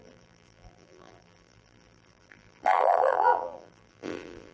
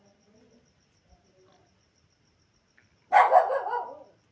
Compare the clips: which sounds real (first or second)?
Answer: second